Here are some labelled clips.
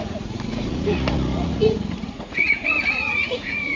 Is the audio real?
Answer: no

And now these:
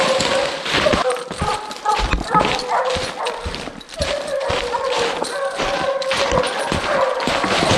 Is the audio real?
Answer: yes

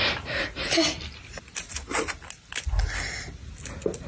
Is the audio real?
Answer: yes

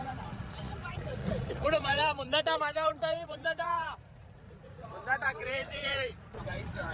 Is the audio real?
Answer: no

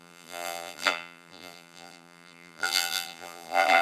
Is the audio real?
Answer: no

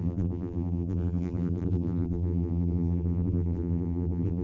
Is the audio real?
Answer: no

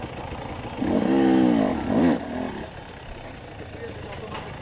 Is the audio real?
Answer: yes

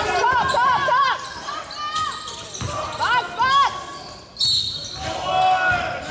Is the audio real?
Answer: yes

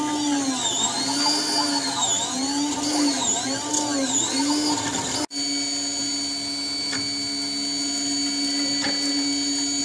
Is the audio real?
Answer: yes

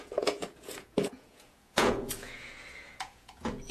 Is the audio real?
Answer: no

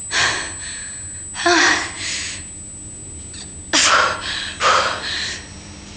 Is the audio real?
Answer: yes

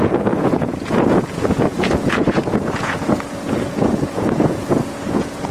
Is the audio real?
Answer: no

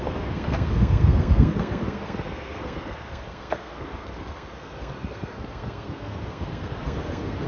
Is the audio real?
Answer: no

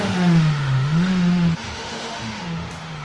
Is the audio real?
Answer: no